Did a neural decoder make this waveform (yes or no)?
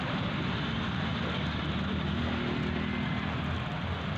no